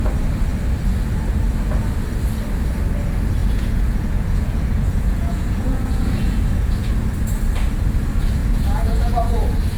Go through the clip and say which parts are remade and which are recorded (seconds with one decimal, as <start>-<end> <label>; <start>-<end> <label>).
0.0-3.4 recorded; 3.4-6.9 remade; 6.9-8.4 recorded; 8.4-9.4 remade; 9.4-9.8 recorded